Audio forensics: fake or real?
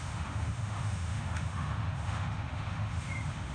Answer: fake